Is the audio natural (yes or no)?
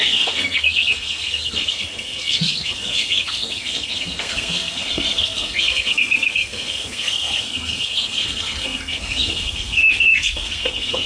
no